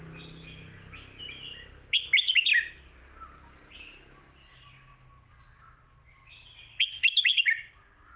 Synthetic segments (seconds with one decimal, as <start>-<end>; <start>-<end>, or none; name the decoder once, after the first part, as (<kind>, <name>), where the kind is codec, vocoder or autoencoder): none